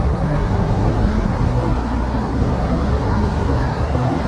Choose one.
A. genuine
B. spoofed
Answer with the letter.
B